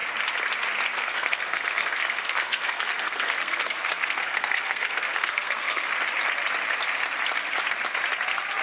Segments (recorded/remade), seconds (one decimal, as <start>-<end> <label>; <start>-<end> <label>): 0.0-0.9 recorded; 0.9-5.8 remade; 5.8-8.6 recorded